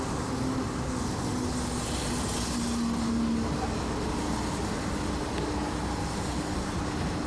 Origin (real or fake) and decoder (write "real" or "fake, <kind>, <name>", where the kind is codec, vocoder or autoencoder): real